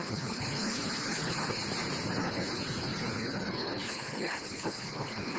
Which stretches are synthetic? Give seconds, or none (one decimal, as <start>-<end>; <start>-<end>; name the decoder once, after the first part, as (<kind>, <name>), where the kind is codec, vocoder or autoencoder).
0.0-1.6 (codec, HILCodec); 2.2-5.4